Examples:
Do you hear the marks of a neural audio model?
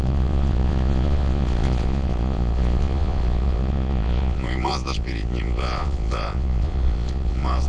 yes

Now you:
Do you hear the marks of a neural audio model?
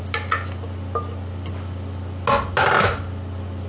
no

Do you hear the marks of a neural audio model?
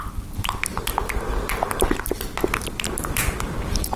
no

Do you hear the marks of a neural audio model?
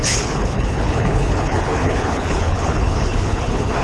yes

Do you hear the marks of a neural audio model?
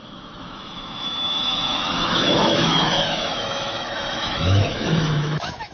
yes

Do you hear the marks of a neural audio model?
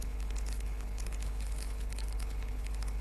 yes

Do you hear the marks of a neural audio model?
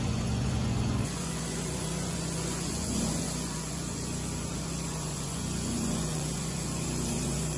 yes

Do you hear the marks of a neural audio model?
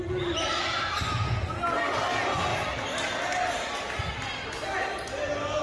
no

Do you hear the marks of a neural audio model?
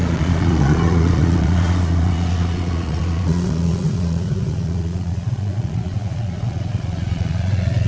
yes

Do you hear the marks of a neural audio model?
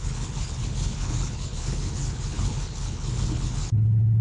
yes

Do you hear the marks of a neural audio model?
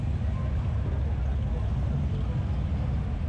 no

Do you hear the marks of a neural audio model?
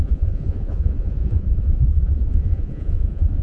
yes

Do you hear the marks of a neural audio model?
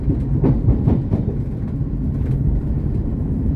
yes